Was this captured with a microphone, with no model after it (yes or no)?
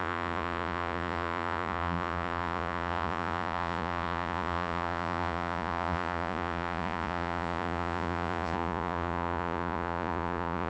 no